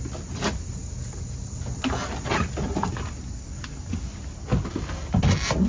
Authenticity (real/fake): real